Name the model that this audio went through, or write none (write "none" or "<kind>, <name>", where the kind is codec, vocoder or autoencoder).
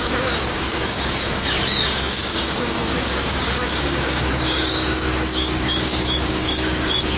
codec, DAC